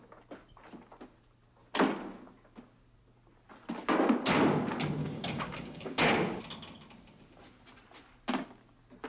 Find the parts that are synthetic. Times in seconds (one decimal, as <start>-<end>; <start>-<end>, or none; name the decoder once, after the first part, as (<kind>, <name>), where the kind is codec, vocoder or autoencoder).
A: 5.0-6.0 (codec, DAC)

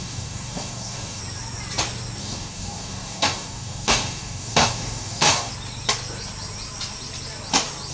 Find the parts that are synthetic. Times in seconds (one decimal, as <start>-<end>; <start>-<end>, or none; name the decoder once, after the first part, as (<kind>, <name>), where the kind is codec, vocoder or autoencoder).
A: 0.0-1.2 (codec, DAC); 2.2-5.5

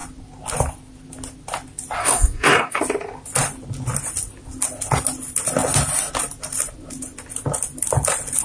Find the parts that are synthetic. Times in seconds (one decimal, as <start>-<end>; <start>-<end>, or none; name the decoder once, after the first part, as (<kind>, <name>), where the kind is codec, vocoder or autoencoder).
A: 2.0-2.8 (codec, DAC)

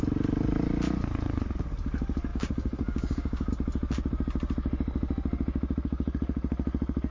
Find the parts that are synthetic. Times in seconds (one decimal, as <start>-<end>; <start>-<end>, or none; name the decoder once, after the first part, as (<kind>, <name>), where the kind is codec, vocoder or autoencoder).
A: 2.3-3.5 (codec, DAC)

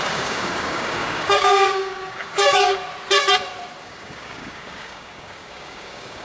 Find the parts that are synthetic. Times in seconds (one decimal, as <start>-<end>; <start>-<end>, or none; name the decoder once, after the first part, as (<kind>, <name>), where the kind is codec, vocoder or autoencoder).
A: 0.0-2.7 (codec, DAC); 3.8-6.2